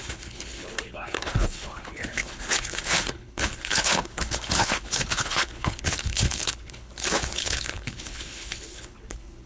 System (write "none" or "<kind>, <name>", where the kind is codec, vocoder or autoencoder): codec, HILCodec